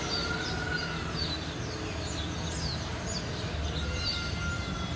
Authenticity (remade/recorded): recorded